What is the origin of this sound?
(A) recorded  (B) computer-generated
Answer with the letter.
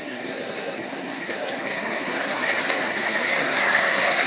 B